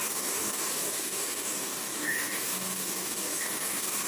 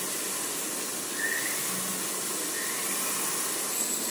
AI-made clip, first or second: first